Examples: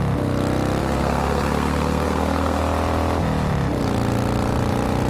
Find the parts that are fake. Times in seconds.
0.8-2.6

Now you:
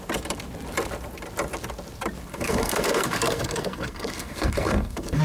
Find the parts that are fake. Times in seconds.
2.3-5.2

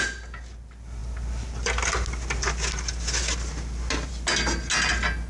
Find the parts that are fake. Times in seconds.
none

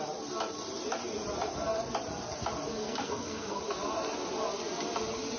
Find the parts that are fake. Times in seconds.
2.8-3.6

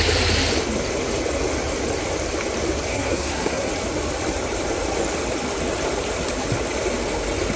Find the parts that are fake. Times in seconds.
2.9-3.7